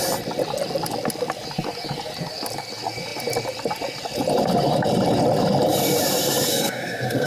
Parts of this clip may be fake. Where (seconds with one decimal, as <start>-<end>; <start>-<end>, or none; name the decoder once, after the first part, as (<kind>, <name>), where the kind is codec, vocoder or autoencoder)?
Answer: 6.5-7.3 (codec, SNAC)